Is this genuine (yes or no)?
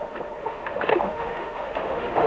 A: no